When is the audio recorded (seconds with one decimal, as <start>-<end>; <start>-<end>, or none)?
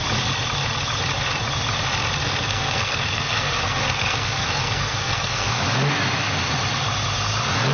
0.0-2.2; 5.6-7.7